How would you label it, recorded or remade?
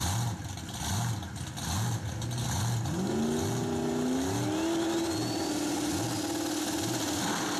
recorded